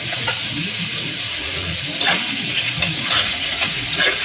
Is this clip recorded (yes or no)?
no